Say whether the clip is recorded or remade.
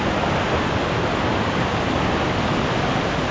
recorded